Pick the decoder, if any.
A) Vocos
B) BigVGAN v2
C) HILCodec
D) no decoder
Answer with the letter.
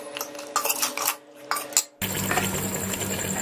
D